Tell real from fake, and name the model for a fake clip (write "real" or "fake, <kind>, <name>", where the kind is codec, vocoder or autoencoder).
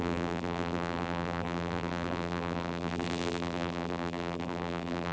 fake, vocoder, BigVGAN v2